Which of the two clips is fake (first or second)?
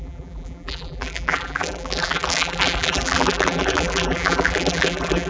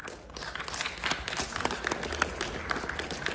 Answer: first